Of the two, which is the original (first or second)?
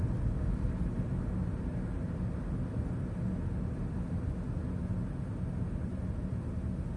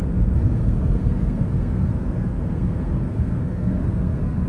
first